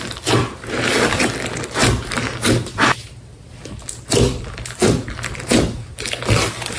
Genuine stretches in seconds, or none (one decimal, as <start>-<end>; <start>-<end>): 0.0-6.8